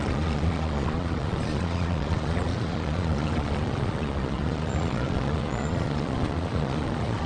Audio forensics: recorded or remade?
remade